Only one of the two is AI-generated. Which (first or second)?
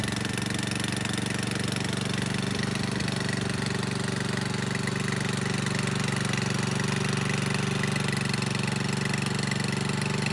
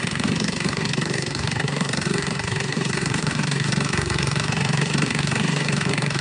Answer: second